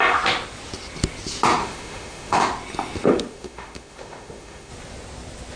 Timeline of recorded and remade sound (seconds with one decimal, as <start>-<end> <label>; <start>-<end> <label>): 0.0-1.6 recorded; 1.6-2.4 remade; 2.4-3.1 recorded; 3.1-4.7 remade; 4.7-5.6 recorded